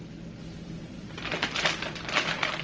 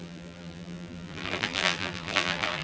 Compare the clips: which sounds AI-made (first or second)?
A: second